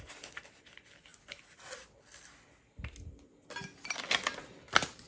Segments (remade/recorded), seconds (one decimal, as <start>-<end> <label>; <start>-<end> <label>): 0.0-5.1 recorded